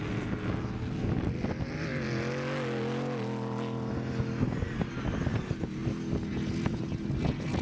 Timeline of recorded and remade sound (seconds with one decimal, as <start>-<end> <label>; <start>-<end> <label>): 0.0-7.6 recorded